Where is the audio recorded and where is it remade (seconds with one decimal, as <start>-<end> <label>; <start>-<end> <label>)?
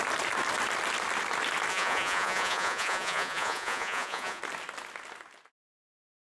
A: 0.0-1.7 recorded; 1.7-4.4 remade; 4.4-6.3 recorded